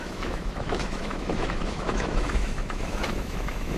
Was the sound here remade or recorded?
remade